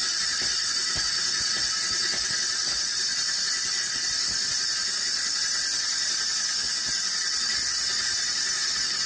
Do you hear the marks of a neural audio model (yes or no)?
no